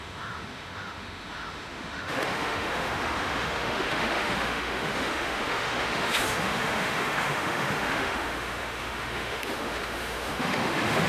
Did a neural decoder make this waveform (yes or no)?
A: yes